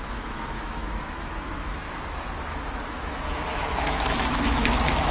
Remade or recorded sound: remade